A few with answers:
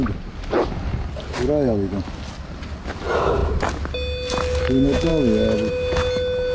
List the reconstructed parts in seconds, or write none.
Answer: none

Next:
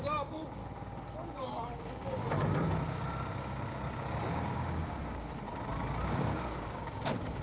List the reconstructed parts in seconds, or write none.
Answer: 0.0-0.6 (codec, DAC); 1.3-2.2; 4.2-5.3; 6.1-7.4

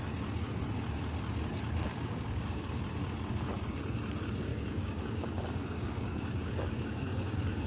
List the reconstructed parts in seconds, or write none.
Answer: 1.9-2.6 (codec, DAC); 4.5-7.7

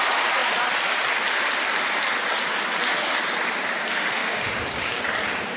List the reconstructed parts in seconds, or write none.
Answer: 4.2-5.0 (codec, DAC)